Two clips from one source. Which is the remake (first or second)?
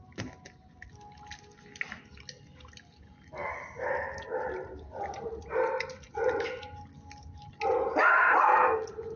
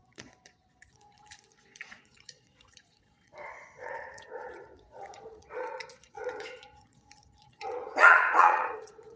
second